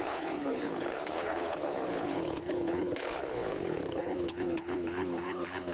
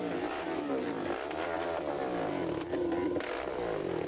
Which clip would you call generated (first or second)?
first